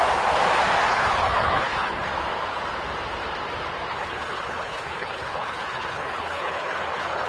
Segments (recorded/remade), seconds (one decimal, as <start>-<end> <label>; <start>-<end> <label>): 0.0-0.9 recorded; 0.9-2.1 remade; 2.1-3.9 recorded; 3.9-7.3 remade